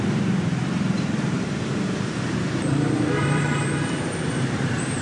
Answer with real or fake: fake